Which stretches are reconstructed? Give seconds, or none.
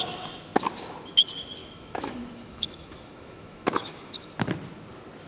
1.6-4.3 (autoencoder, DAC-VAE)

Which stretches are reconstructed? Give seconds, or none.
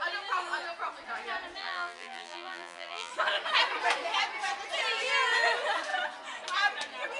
1.6-3.1 (vocoder, BigVGAN v2)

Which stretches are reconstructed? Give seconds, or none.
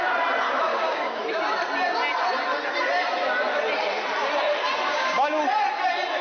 0.7-1.2 (codec, DAC); 4.9-5.4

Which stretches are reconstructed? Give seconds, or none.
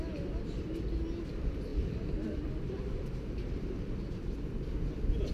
1.7-4.1 (vocoder, BigVGAN v2)